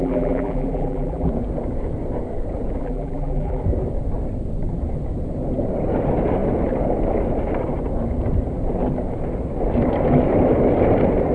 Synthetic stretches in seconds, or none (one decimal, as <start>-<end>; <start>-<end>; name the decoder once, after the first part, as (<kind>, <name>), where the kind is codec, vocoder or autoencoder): 0.0-1.3 (vocoder, BigVGAN v2); 2.8-3.6